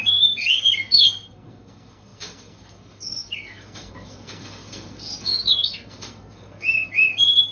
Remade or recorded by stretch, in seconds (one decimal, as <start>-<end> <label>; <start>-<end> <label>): 0.0-7.5 remade